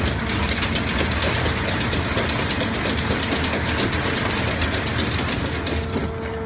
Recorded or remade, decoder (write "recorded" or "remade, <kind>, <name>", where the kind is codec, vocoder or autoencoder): recorded